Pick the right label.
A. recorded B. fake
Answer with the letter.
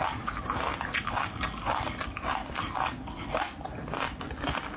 A